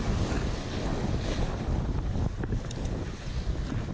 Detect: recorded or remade recorded